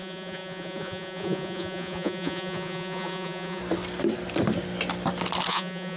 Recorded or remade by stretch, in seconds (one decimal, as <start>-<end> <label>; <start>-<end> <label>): 0.0-3.6 remade; 3.6-5.5 recorded; 5.5-6.0 remade